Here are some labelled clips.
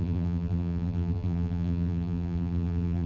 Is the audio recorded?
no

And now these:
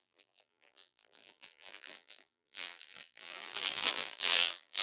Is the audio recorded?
no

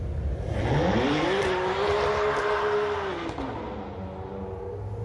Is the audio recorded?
yes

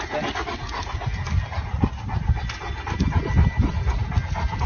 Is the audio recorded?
yes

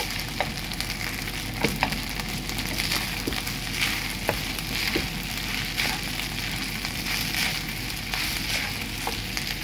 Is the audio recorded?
yes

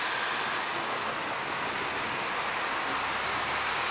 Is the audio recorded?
yes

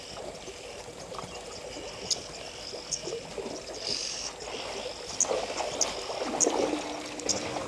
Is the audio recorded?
yes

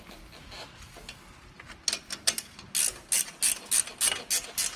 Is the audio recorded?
yes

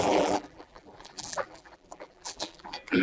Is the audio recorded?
no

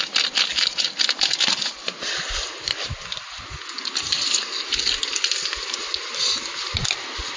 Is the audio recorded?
yes